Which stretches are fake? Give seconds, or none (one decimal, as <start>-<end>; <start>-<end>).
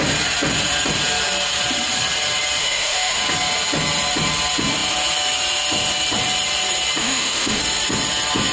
2.6-3.2; 7.0-7.6